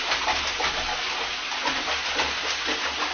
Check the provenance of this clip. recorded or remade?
recorded